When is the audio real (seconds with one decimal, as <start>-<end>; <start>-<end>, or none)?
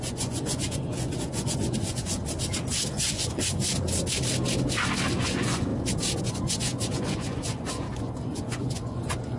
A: 2.2-2.9; 3.7-5.2; 5.7-6.2